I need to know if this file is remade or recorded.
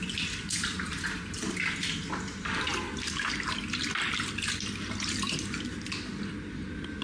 recorded